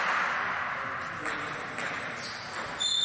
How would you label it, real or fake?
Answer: real